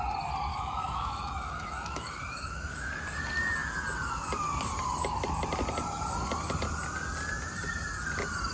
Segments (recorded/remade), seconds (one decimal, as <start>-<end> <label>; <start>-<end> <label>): 0.0-0.5 recorded; 0.5-2.9 remade; 2.9-8.5 recorded